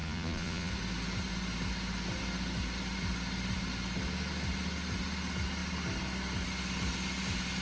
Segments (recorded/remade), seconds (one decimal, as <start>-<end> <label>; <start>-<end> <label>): 0.0-0.7 remade; 0.7-7.6 recorded